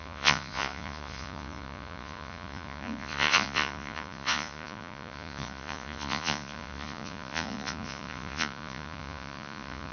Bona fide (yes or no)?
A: no